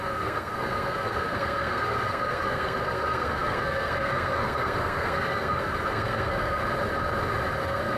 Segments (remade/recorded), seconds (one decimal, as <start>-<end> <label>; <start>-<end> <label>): 0.0-6.6 remade; 6.6-7.6 recorded; 7.6-8.0 remade